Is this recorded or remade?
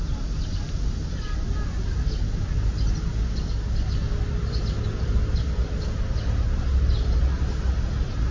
recorded